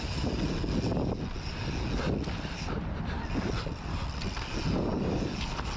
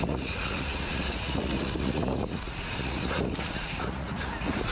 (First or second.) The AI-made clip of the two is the second